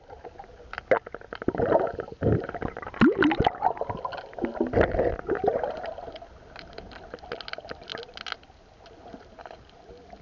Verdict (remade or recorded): recorded